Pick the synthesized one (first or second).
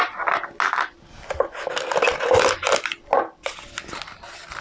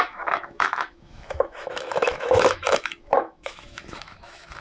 second